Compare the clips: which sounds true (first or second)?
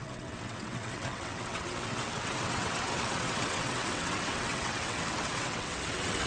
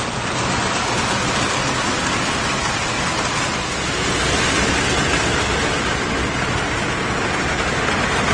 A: second